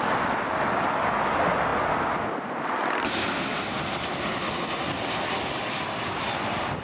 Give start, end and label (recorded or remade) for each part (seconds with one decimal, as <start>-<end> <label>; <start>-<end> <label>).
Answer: 0.0-6.8 recorded